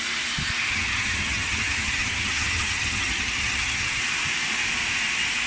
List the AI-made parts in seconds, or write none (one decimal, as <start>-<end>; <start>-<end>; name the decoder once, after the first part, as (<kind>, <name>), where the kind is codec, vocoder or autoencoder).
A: 0.7-4.0 (vocoder, HiFi-GAN)